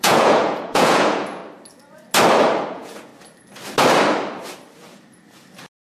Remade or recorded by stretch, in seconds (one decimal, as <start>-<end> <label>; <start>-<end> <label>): 0.0-1.4 remade; 1.4-2.7 recorded; 2.7-3.1 remade; 3.1-5.9 recorded